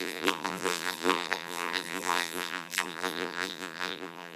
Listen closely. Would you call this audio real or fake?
fake